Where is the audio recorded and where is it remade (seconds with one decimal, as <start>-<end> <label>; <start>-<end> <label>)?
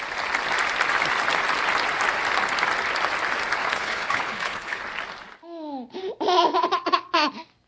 0.0-3.6 recorded; 3.6-4.8 remade; 4.8-7.7 recorded